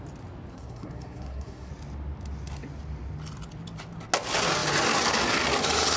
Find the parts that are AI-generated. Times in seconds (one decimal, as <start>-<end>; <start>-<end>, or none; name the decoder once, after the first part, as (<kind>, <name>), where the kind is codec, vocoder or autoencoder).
0.5-1.7 (codec, SNAC)